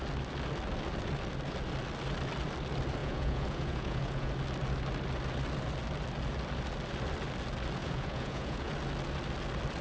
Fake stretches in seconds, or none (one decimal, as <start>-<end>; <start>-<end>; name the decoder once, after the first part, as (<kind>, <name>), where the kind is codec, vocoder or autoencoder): 3.0-4.3 (vocoder, Vocos); 7.8-8.7